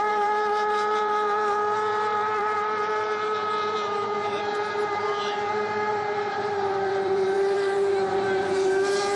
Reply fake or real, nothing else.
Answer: fake